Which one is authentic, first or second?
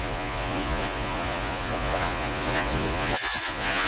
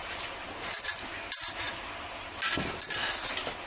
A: second